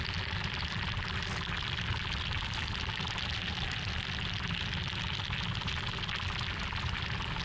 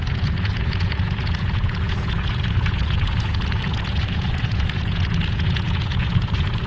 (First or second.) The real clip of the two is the first